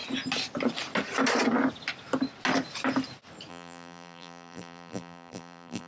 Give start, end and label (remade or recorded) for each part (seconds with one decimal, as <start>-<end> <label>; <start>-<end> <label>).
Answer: 0.0-3.5 recorded; 3.5-5.9 remade